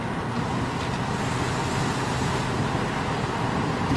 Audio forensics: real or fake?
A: real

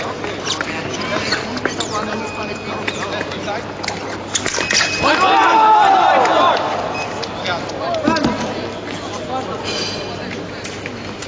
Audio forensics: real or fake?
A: real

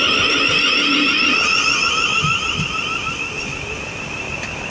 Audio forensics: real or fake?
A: real